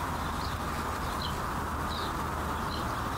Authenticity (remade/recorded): recorded